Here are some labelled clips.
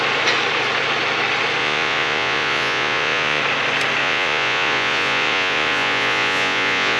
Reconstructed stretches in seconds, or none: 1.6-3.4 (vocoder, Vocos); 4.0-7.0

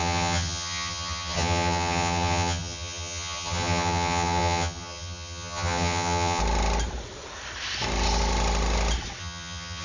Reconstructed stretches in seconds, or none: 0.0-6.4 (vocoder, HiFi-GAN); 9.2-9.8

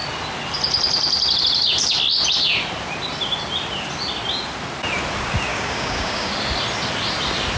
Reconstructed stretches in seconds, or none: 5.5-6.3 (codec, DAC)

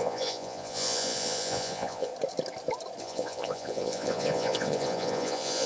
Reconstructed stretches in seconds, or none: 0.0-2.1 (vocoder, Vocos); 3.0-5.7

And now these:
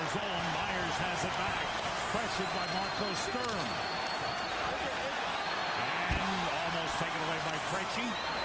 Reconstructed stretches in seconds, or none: none

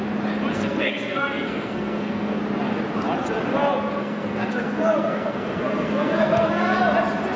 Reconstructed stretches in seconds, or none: 0.5-2.4 (codec, SNAC); 4.0-6.8